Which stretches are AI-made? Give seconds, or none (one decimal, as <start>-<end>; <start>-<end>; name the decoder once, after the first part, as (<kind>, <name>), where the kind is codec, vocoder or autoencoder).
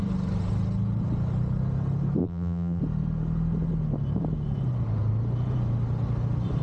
2.2-2.8 (vocoder, BigVGAN v2)